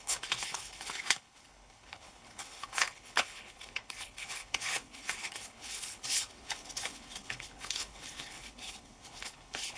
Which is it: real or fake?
fake